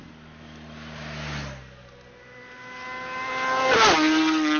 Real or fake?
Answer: real